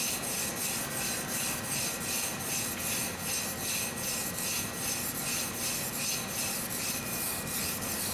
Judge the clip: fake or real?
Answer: real